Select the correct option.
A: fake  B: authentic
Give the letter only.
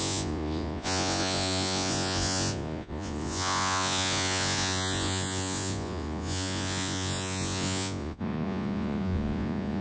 A